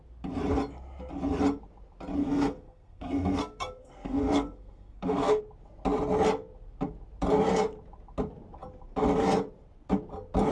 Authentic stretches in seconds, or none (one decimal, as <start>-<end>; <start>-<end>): 0.0-2.2; 5.4-10.5